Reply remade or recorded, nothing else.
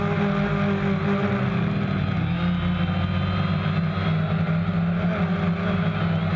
recorded